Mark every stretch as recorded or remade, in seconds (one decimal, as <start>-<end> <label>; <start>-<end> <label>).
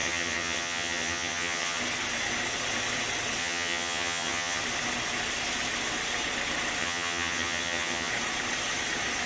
0.0-1.8 remade; 1.8-3.4 recorded; 3.4-4.6 remade; 4.6-6.8 recorded; 6.8-8.1 remade; 8.1-9.3 recorded